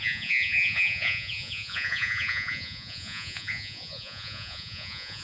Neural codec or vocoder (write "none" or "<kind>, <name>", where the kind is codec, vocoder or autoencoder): vocoder, Vocos